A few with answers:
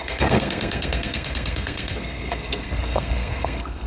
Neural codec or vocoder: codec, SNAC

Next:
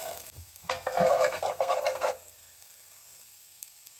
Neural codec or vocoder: codec, SNAC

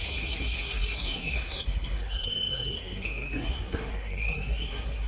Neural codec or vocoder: codec, SNAC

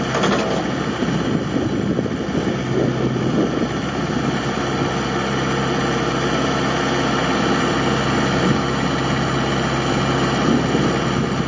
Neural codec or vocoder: none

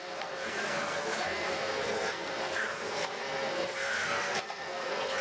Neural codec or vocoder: codec, SNAC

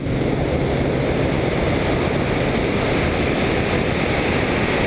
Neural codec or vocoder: none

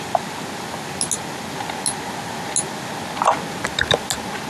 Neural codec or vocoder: none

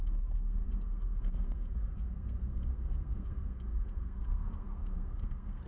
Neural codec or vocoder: codec, SNAC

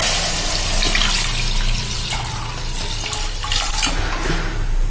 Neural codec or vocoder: none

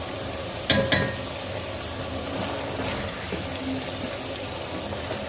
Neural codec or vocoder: none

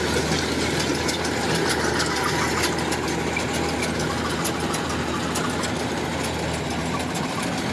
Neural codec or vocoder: none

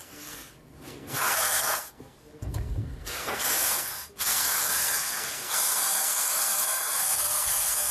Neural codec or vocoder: codec, SNAC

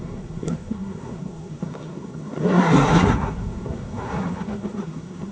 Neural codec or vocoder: codec, SNAC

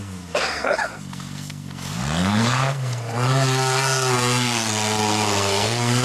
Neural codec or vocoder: codec, SNAC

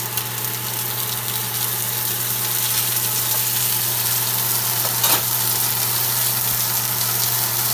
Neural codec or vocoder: none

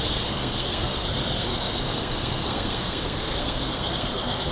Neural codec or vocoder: codec, SNAC